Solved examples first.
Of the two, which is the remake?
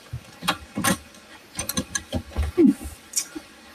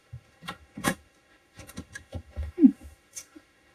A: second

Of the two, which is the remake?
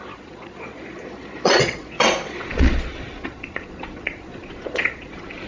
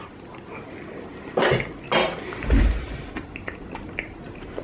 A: first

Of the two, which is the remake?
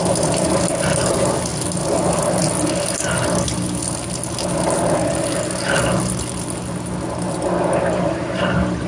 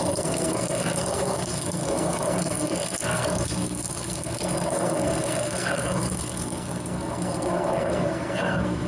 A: second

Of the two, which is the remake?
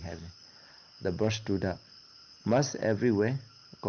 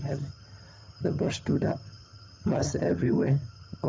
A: second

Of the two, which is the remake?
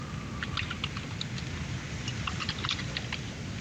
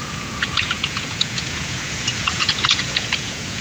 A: second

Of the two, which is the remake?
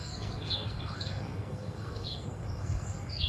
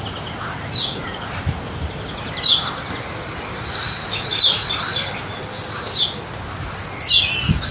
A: first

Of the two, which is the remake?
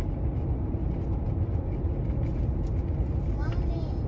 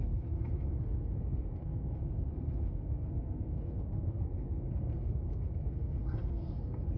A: second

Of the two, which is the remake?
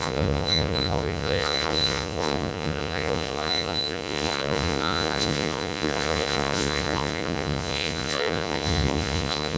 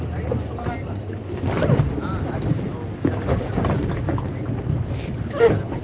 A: first